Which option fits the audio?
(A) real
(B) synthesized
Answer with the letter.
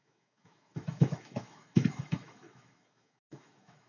B